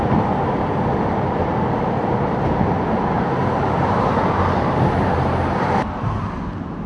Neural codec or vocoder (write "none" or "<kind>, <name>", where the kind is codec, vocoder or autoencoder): vocoder, BigVGAN v2